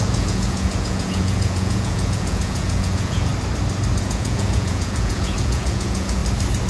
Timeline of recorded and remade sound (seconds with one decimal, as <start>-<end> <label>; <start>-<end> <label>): 0.0-3.3 remade; 3.3-4.0 recorded; 4.0-6.2 remade; 6.2-6.7 recorded